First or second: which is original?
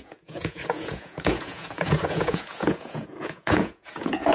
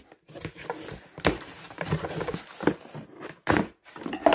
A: second